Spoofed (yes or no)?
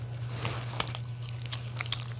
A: no